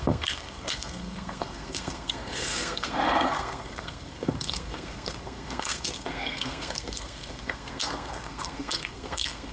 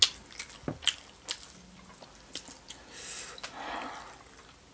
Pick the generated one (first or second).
first